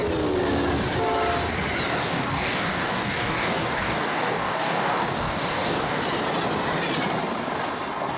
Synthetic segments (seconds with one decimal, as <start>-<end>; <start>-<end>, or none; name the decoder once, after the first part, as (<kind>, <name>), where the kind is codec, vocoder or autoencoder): 2.0-6.0 (codec, DAC)